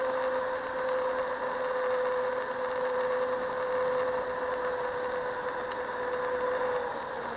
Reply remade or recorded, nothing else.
recorded